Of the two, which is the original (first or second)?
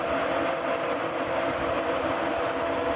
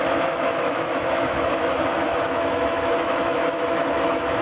first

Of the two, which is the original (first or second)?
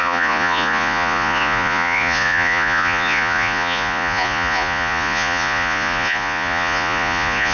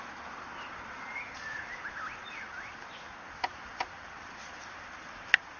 second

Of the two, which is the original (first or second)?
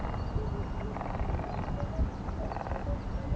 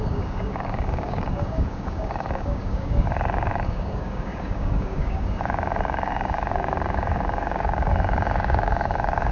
first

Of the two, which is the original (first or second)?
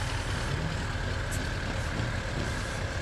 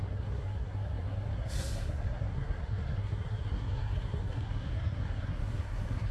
first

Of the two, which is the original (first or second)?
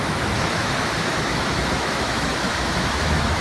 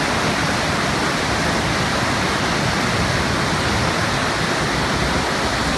second